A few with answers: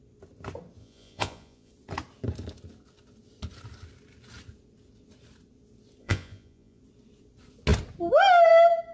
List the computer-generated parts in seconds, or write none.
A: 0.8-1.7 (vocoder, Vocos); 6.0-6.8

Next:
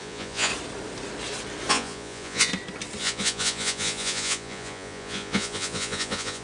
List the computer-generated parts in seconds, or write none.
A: 0.0-0.5 (vocoder, Vocos); 1.7-2.5; 3.0-6.4

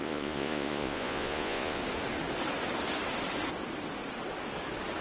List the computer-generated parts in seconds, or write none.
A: 0.0-1.8 (vocoder, Vocos)